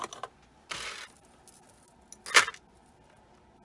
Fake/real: real